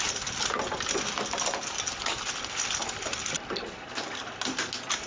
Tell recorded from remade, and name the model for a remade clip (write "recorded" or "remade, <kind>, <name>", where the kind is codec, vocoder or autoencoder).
recorded